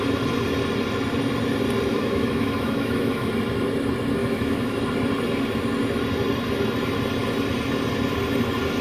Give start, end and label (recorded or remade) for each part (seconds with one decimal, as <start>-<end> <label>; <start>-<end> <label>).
0.0-1.9 recorded; 1.9-3.3 remade; 3.3-4.2 recorded; 4.2-4.8 remade; 4.8-8.8 recorded